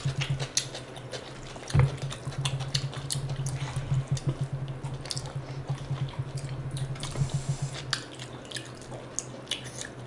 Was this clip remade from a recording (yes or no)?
no